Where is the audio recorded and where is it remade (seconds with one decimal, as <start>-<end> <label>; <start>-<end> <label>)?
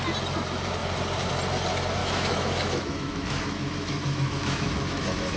0.0-2.0 recorded; 2.0-5.4 remade